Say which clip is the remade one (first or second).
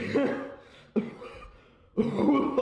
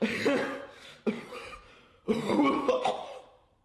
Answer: second